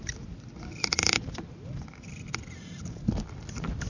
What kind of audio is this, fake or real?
real